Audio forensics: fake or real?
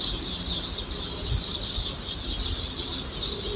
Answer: real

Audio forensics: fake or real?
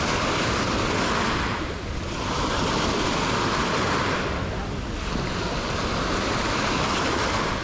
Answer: real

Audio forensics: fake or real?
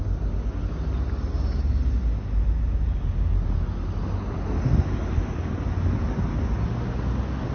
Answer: real